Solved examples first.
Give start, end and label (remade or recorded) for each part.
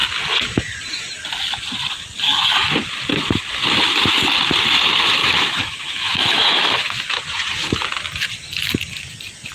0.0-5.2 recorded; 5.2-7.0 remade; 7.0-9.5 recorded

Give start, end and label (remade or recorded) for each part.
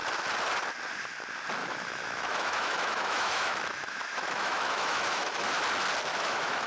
0.0-1.6 recorded; 1.6-5.6 remade; 5.6-6.1 recorded; 6.1-6.7 remade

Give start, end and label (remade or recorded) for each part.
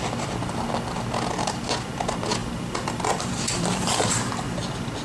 0.0-2.4 recorded; 2.4-4.3 remade; 4.3-5.0 recorded